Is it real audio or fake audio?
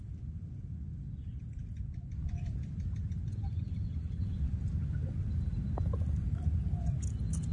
real